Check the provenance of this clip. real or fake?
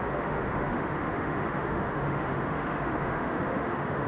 fake